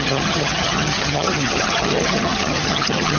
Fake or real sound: fake